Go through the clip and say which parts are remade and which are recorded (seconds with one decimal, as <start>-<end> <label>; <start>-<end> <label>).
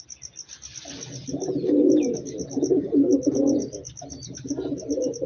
0.0-5.3 recorded